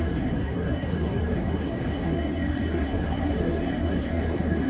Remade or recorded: remade